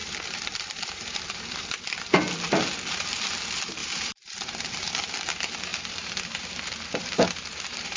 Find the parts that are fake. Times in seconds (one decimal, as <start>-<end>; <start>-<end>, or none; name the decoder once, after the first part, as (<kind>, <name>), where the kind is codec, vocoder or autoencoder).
0.0-1.8 (vocoder, BigVGAN v2); 3.8-5.1; 5.7-8.0